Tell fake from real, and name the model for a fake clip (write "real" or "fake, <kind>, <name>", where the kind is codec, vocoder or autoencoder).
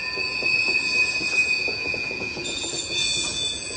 fake, vocoder, Vocos